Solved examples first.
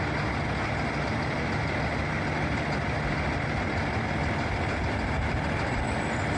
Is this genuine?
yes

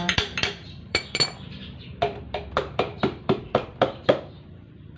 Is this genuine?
no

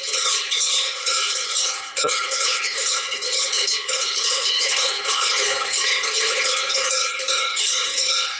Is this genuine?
no